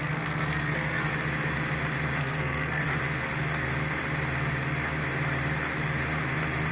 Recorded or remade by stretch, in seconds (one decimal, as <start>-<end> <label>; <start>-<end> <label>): 0.0-1.1 remade; 1.1-2.2 recorded; 2.2-2.8 remade; 2.8-6.7 recorded